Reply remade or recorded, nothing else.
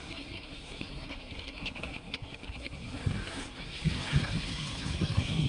remade